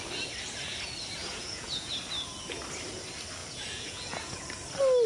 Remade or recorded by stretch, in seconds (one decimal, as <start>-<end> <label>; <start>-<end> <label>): 0.0-1.2 recorded; 1.2-1.9 remade; 1.9-3.4 recorded; 3.4-4.4 remade; 4.4-5.1 recorded